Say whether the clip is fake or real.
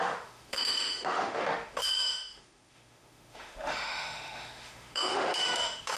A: fake